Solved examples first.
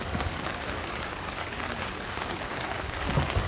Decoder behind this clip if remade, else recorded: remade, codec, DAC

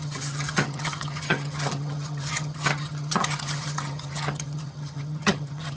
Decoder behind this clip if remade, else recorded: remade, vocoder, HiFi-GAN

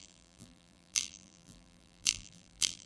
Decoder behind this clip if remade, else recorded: remade, vocoder, BigVGAN v2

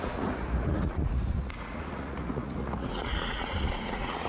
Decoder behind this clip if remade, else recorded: remade, vocoder, Vocos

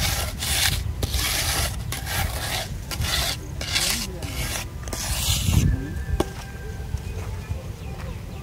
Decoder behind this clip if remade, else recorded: recorded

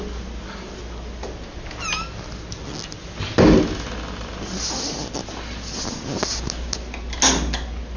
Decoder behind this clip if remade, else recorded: recorded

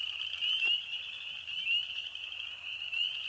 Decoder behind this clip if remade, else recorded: recorded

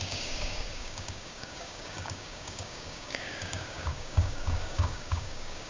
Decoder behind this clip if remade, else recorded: remade, codec, DAC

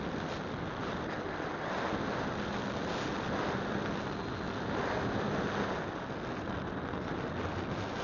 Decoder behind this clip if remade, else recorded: recorded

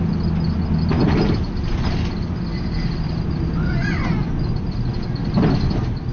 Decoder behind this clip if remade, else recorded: recorded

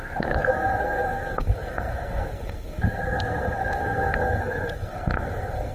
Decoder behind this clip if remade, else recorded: remade, codec, SNAC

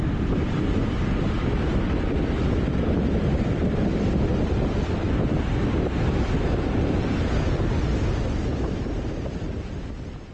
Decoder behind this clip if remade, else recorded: remade, vocoder, BigVGAN v2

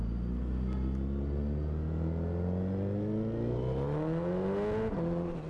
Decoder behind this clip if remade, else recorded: recorded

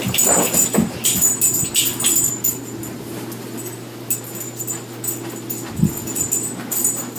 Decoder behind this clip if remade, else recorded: recorded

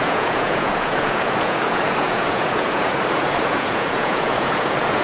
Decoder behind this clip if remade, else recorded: remade, vocoder, Vocos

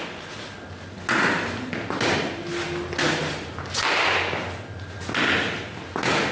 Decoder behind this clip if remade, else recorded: recorded